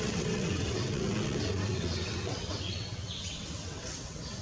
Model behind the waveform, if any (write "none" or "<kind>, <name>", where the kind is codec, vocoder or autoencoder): vocoder, WaveNeXt